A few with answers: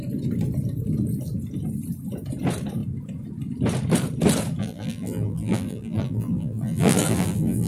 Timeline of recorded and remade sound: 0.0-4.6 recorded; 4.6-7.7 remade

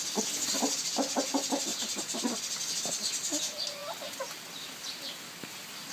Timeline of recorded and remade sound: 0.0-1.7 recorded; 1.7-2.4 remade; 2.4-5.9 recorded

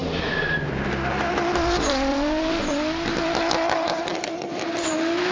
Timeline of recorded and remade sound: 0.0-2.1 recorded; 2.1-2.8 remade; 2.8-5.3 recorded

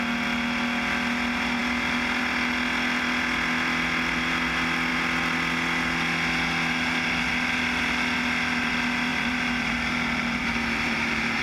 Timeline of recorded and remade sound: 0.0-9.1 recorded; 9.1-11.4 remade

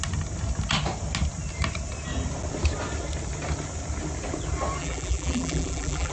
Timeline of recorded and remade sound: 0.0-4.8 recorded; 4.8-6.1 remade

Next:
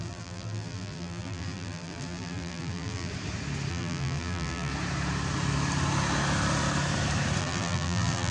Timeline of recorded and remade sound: 0.0-3.1 remade; 3.1-3.7 recorded; 3.7-4.7 remade; 4.7-7.4 recorded; 7.4-8.3 remade

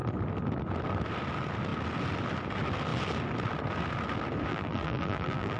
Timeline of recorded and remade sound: 0.0-4.5 recorded; 4.5-5.6 remade

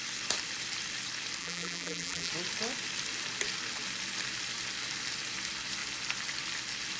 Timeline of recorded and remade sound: 0.0-1.4 recorded; 1.4-2.3 remade; 2.3-7.0 recorded